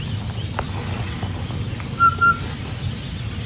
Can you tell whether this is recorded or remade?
recorded